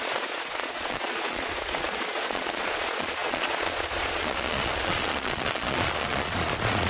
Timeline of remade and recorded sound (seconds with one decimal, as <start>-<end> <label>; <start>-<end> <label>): 0.0-6.9 remade